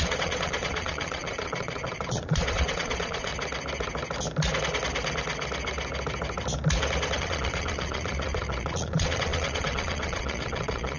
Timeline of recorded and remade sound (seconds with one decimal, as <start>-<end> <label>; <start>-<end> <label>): 0.0-3.3 remade; 3.3-7.2 recorded; 7.2-11.0 remade